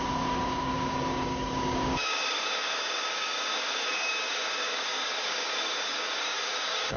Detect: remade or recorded remade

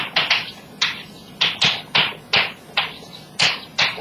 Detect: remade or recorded recorded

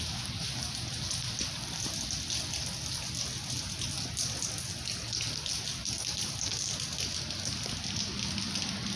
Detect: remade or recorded recorded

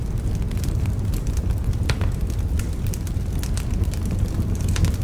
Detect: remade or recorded recorded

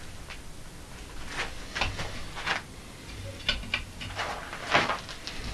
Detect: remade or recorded recorded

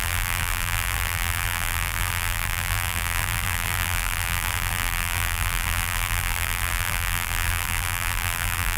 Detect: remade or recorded remade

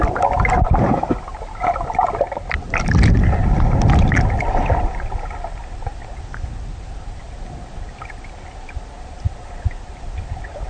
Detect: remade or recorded recorded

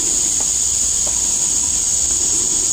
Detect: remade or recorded recorded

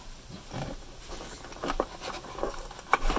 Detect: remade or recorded remade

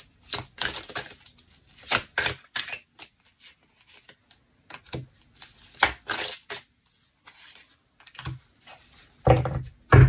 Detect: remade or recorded recorded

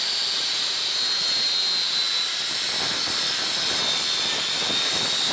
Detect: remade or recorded recorded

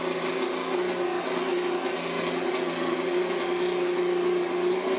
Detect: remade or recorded recorded